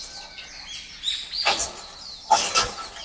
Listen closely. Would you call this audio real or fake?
real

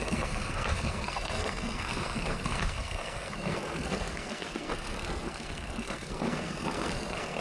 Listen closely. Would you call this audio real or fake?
fake